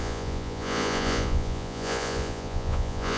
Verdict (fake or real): fake